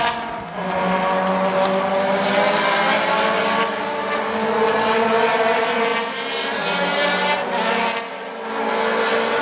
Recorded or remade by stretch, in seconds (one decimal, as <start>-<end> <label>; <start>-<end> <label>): 0.0-9.4 recorded